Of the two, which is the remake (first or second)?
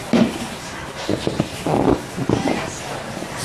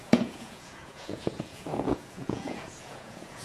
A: second